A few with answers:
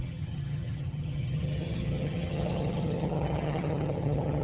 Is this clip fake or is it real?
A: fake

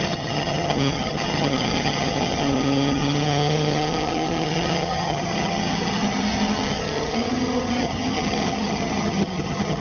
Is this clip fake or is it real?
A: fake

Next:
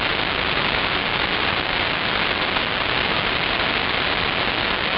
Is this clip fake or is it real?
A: real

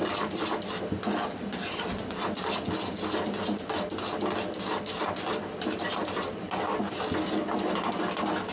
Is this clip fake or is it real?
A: real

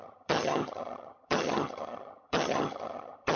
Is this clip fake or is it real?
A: fake